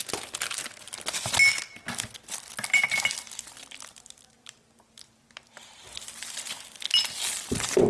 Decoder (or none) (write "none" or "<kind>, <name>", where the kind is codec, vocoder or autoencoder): none